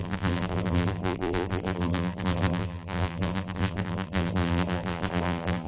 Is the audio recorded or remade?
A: remade